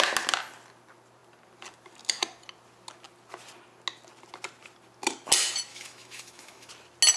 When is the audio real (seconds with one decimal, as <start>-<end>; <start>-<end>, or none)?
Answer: 0.0-5.7; 6.7-7.2